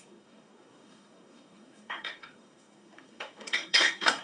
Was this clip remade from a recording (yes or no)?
yes